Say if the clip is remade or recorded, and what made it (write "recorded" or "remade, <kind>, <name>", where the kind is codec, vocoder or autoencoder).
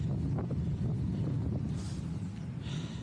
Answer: recorded